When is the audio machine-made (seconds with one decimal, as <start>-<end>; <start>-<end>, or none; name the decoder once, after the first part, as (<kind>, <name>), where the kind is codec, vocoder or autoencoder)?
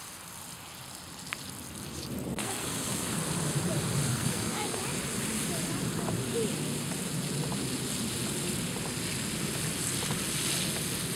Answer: 2.3-3.2 (codec, SNAC); 4.1-4.8